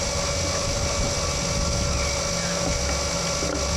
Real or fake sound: real